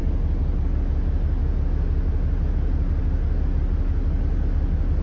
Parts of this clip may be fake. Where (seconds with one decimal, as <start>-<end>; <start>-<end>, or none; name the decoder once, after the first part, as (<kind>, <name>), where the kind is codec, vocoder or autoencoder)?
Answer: none